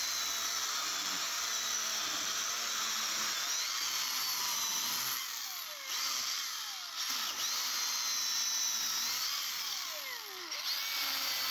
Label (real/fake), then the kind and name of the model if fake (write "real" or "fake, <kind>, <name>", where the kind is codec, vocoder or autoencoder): real